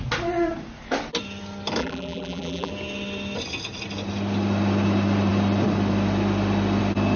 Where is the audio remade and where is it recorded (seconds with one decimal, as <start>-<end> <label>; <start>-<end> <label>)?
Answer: 0.0-1.8 recorded; 1.8-2.7 remade; 2.7-7.2 recorded